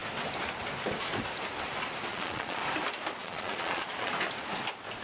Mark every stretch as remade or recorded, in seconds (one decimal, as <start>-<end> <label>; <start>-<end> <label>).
0.0-2.1 recorded; 2.1-2.6 remade; 2.6-3.2 recorded; 3.2-4.1 remade; 4.1-5.0 recorded